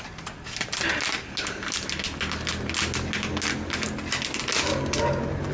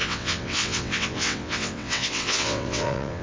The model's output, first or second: second